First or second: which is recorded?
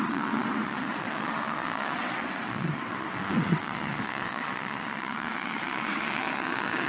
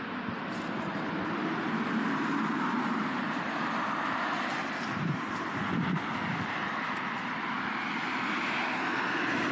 second